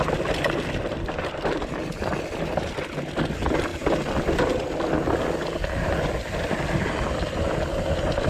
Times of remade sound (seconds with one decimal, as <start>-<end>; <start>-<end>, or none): 0.9-2.1